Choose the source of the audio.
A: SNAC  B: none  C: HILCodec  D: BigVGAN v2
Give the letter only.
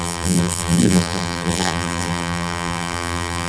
D